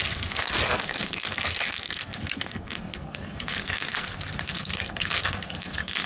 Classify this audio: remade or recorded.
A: remade